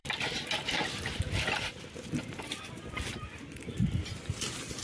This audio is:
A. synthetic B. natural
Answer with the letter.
A